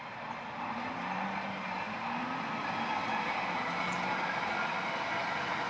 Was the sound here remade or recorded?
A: recorded